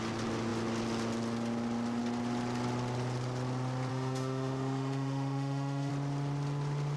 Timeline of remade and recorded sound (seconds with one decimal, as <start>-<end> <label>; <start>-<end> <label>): 0.0-3.9 recorded; 3.9-5.9 remade; 5.9-7.0 recorded